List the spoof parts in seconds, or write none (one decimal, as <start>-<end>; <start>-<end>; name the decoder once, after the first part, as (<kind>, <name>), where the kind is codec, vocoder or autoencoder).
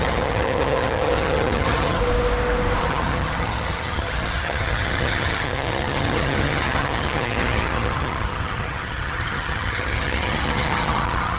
0.0-2.0 (vocoder, HiFi-GAN); 2.8-11.4